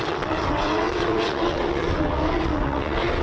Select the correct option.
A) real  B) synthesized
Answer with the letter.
B